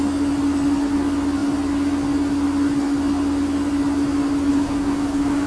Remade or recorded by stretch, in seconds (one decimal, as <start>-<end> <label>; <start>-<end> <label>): 0.0-4.5 recorded; 4.5-5.5 remade